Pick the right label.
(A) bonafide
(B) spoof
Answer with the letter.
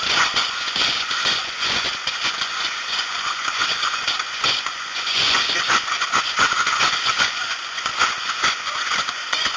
B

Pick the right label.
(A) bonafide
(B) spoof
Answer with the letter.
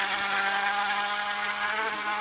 A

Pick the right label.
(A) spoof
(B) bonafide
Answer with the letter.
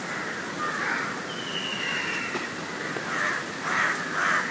B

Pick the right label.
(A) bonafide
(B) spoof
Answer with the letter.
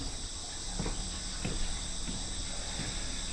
A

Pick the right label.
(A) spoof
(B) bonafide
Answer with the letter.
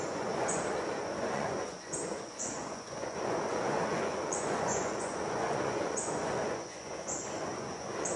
A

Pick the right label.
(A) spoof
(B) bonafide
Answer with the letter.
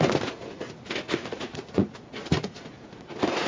A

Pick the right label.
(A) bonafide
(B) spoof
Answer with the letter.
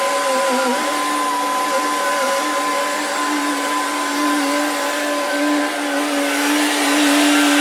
A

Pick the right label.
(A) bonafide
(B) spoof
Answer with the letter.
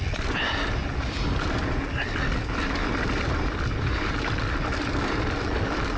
A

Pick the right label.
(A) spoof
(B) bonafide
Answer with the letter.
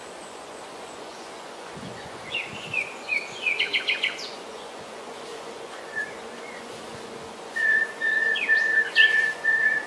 A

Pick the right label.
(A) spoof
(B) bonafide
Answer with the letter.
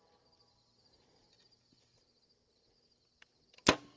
B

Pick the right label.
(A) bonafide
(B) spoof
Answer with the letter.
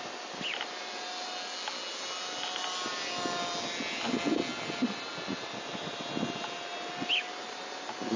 A